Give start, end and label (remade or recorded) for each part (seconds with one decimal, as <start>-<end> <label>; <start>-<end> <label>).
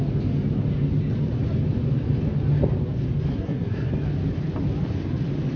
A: 0.0-3.3 recorded; 3.3-3.9 remade; 3.9-5.6 recorded